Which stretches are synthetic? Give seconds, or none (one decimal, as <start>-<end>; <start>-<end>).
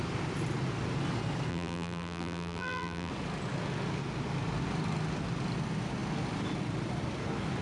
1.5-3.1